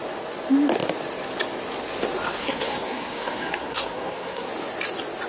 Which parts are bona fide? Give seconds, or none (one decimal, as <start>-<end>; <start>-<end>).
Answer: 0.0-2.4; 4.5-5.3